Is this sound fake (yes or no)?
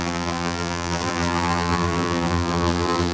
yes